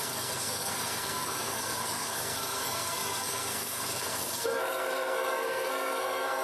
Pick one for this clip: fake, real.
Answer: fake